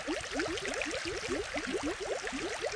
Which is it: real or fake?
real